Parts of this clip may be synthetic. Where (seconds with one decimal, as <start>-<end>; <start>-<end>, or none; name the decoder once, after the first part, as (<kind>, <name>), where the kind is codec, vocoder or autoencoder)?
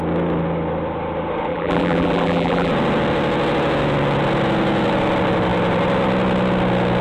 1.5-2.7 (vocoder, BigVGAN v2)